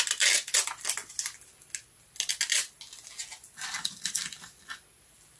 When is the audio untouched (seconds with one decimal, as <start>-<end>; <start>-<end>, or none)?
0.0-5.4

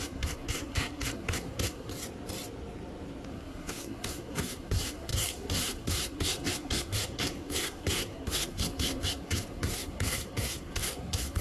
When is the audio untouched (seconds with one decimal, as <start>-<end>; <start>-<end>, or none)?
1.9-3.3